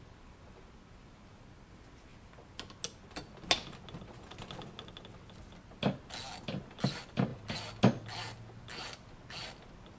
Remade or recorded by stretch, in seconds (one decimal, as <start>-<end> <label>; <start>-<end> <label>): 0.0-10.0 recorded